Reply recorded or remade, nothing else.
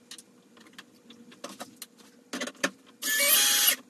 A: recorded